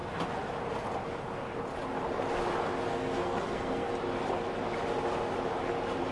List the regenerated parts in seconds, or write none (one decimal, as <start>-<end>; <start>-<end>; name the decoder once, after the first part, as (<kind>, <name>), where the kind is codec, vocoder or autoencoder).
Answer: 2.9-3.9 (codec, SNAC)